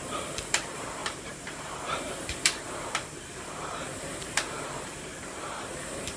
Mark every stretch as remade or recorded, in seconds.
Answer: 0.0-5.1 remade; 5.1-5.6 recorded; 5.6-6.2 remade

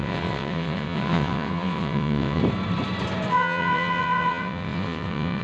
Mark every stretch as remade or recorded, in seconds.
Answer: 0.0-2.4 remade; 2.4-3.3 recorded; 3.3-5.4 remade

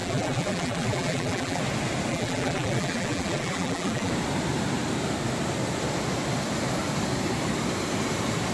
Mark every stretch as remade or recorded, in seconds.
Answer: 0.0-1.6 remade; 1.6-2.1 recorded; 2.1-4.1 remade; 4.1-8.5 recorded